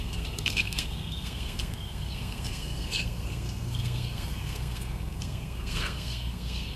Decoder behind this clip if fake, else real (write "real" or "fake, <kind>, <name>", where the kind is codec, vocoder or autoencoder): fake, codec, SNAC